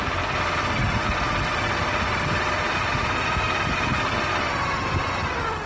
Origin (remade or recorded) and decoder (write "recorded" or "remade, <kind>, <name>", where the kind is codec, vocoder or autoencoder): recorded